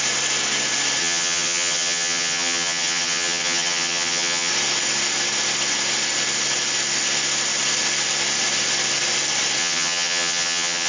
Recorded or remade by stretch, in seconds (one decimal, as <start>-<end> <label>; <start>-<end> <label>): 0.0-1.0 recorded; 1.0-4.5 remade; 4.5-9.6 recorded; 9.6-10.9 remade